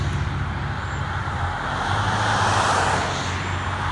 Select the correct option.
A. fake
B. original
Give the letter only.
B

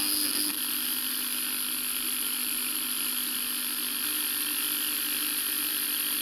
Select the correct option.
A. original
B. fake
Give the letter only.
A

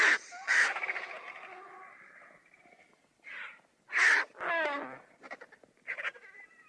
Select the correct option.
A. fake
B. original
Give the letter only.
B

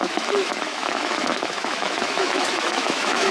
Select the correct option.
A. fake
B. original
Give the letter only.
A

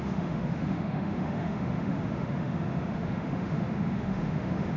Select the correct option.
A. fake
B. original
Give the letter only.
A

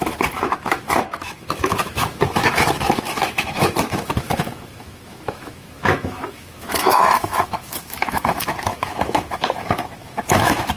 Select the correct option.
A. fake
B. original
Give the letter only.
A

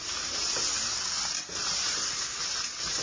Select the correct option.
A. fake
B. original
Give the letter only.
B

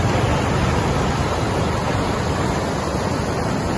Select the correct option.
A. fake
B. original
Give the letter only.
B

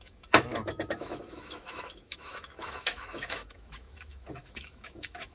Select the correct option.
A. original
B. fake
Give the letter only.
B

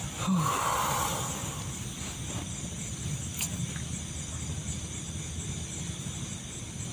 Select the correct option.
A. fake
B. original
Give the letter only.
B